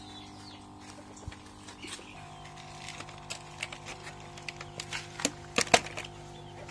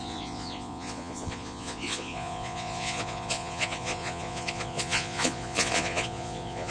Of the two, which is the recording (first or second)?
first